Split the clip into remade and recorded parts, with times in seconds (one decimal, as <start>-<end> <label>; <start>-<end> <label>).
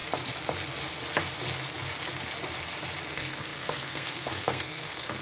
0.0-3.1 recorded; 3.1-5.2 remade